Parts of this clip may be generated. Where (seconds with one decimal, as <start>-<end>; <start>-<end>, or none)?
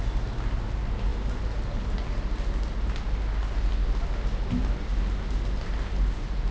none